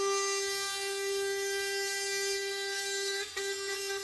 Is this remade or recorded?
remade